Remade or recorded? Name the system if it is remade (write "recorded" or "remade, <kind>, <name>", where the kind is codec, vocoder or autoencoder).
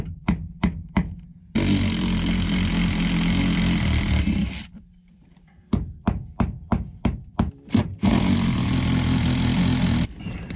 remade, vocoder, BigVGAN v2